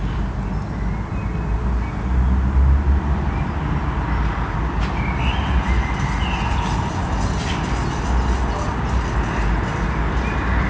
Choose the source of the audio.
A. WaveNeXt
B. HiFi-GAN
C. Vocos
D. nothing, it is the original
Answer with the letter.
D